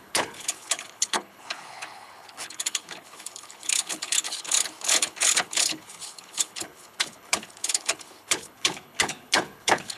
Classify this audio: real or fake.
fake